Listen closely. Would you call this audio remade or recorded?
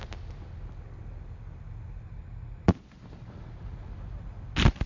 recorded